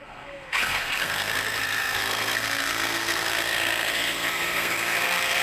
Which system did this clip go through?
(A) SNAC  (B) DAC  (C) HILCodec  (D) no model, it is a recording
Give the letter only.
A